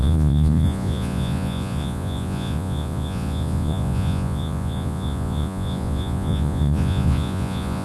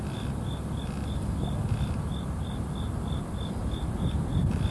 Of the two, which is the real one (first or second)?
second